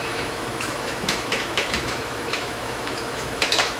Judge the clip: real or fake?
fake